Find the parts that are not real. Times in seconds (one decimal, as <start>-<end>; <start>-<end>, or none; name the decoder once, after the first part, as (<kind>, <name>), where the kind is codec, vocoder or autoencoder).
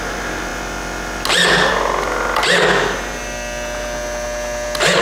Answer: none